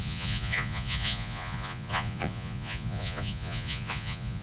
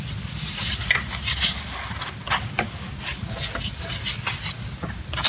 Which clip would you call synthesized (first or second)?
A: first